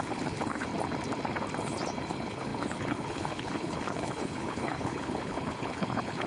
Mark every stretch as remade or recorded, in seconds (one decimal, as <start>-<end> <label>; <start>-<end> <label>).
0.0-0.7 remade; 0.7-2.1 recorded; 2.1-6.3 remade